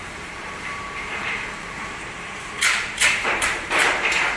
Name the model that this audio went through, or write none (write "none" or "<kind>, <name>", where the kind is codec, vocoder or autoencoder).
vocoder, BigVGAN v2